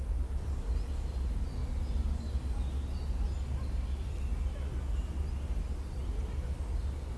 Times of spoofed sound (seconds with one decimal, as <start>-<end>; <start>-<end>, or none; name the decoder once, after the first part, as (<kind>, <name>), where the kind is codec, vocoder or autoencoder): none